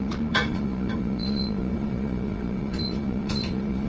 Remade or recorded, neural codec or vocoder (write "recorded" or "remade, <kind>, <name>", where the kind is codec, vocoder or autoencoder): remade, vocoder, Vocos